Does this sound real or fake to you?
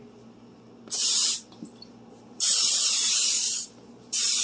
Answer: fake